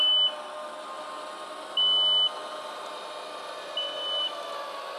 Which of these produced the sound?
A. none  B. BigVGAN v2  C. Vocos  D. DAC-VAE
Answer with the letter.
A